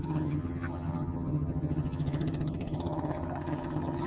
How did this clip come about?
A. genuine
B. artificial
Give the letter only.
B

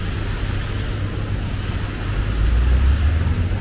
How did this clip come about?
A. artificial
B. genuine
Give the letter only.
B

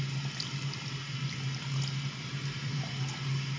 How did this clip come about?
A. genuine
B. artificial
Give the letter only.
A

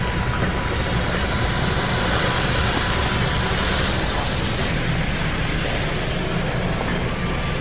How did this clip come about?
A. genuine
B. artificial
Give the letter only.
A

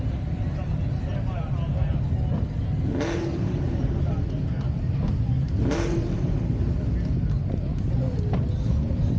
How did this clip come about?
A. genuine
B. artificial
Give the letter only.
A